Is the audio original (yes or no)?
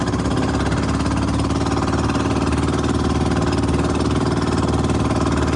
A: yes